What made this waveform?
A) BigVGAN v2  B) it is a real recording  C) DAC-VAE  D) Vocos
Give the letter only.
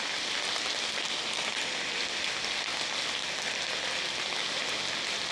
B